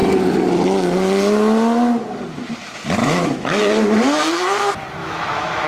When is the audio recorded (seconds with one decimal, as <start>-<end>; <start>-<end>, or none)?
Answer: 0.0-3.0; 3.6-5.0